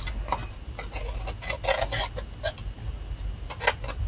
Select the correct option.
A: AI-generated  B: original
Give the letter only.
B